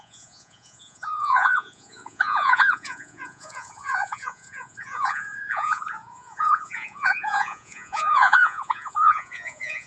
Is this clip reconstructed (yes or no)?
yes